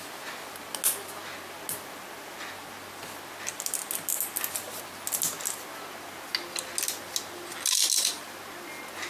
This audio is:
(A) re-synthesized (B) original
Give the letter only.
B